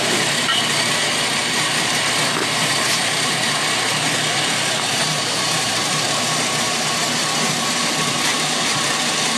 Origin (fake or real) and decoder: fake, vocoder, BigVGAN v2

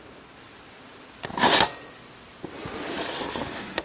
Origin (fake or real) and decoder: real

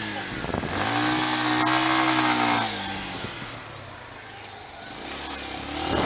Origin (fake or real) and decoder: real